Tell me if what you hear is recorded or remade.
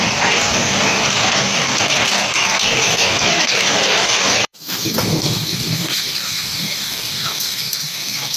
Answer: remade